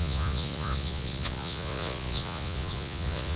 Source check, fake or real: fake